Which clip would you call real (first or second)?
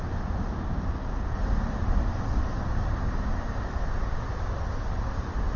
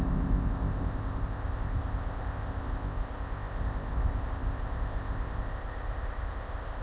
first